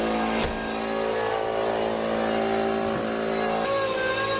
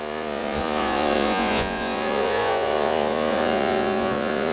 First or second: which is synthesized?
second